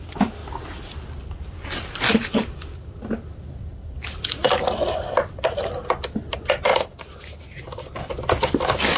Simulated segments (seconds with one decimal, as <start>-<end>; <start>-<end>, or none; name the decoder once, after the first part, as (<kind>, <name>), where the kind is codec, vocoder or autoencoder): none